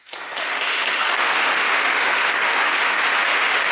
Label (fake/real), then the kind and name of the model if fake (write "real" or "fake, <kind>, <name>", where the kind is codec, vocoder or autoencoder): fake, autoencoder, DAC-VAE